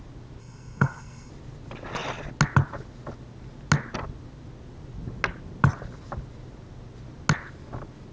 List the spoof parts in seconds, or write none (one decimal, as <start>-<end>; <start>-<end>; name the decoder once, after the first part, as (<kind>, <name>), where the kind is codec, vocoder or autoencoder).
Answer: 0.4-1.3 (codec, SNAC)

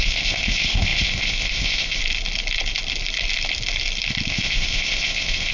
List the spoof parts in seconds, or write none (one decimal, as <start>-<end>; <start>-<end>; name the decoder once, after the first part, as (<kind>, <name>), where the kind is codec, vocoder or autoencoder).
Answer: 0.0-2.0 (codec, ZipCodec); 4.3-5.5

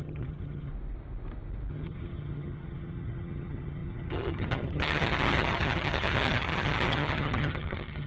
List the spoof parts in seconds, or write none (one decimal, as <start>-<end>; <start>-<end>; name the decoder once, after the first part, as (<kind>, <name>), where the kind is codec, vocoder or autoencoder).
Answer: 0.0-0.7 (vocoder, HiFi-GAN); 1.7-8.1

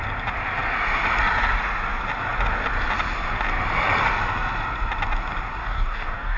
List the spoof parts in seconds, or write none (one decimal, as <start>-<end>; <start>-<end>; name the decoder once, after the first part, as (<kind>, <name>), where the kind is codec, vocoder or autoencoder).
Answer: 5.6-6.4 (codec, DAC)

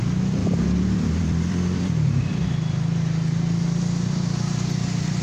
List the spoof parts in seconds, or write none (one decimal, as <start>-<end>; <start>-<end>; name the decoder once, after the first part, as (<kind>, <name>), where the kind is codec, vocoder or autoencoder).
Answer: 0.4-2.5 (vocoder, BigVGAN v2)

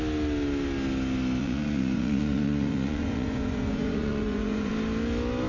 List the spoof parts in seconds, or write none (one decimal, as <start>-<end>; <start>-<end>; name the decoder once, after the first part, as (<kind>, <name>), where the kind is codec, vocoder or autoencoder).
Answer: 1.4-4.7 (vocoder, Vocos)

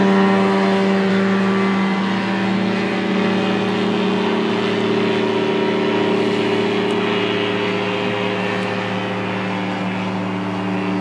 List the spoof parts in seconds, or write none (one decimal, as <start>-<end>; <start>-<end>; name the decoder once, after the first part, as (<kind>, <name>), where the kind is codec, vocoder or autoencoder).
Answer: none

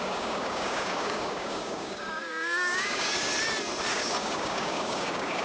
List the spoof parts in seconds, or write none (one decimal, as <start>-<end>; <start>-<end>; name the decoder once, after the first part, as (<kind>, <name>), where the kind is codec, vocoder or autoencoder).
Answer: 0.0-3.3 (codec, DAC); 3.9-5.4